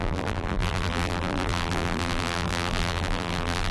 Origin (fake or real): fake